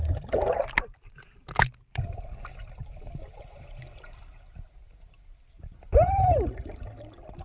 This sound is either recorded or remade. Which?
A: recorded